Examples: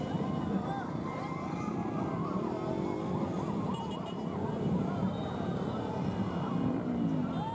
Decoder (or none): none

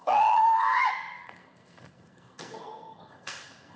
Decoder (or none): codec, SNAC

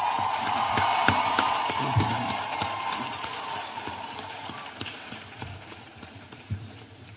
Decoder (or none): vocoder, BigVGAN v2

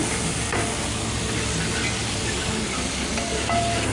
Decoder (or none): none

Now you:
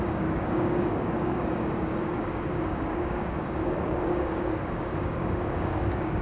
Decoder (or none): codec, DAC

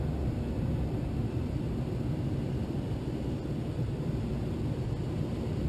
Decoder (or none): vocoder, BigVGAN v2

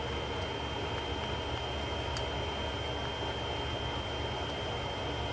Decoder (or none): none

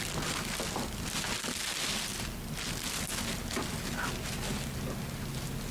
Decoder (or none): none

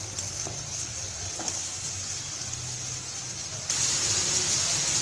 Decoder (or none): none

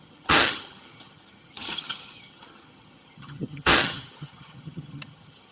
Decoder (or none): vocoder, HiFi-GAN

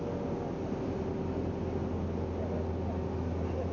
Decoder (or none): none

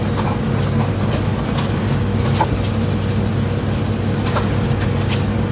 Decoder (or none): none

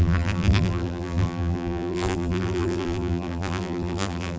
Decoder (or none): vocoder, BigVGAN v2